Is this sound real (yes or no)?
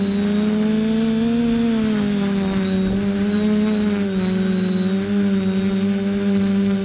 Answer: yes